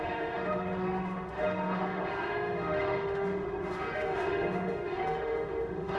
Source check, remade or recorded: remade